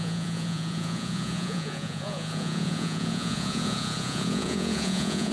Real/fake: fake